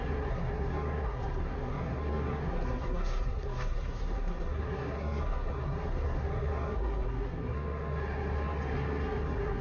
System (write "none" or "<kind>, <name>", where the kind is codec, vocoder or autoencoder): codec, SNAC